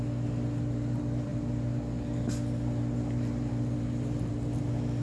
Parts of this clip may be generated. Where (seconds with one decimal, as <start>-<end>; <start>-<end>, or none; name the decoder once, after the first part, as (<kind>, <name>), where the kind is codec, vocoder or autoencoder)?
none